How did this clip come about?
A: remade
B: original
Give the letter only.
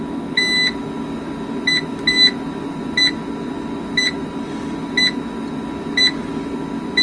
B